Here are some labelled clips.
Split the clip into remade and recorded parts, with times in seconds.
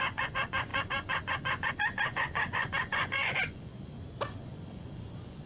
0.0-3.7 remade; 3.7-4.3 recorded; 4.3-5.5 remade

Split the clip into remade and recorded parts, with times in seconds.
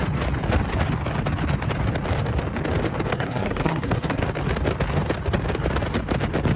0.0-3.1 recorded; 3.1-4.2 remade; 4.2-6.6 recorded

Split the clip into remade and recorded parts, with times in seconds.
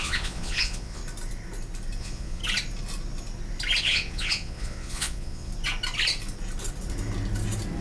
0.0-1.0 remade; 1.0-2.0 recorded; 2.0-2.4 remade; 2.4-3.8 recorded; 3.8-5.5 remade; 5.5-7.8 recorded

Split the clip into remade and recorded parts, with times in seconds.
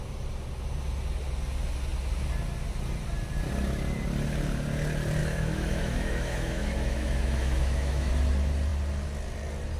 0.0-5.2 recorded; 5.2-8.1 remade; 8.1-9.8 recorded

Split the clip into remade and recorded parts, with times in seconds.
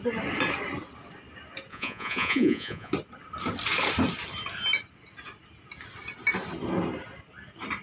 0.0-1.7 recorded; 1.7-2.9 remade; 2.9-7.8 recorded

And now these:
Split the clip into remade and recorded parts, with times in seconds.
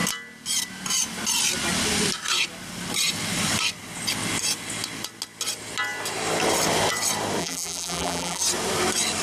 0.0-7.4 recorded; 7.4-8.4 remade; 8.4-9.2 recorded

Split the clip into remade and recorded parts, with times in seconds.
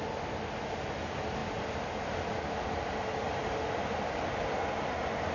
0.0-5.3 recorded